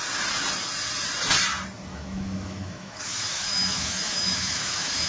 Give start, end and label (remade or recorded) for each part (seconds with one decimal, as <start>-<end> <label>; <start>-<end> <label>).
0.0-1.9 recorded; 1.9-5.1 remade